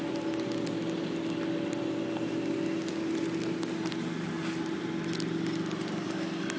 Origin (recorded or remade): recorded